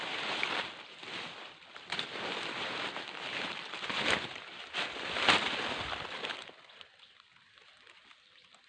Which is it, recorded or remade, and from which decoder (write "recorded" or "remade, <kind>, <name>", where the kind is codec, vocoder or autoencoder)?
recorded